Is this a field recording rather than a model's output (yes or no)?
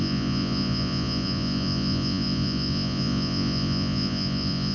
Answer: no